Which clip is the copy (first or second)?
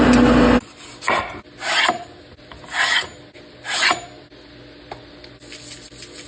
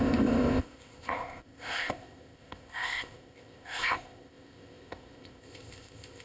second